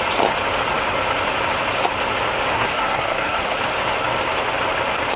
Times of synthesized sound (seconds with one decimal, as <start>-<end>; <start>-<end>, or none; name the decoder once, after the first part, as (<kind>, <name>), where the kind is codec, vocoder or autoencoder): 2.5-3.6 (codec, SNAC)